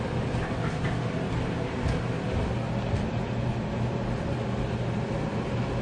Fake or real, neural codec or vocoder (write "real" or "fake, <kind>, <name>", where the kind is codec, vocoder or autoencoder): real